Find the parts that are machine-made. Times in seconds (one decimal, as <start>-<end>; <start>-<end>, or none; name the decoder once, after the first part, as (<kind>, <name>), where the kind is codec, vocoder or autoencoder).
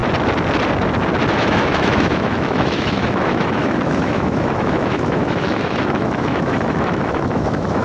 1.3-7.8 (autoencoder, DAC-VAE)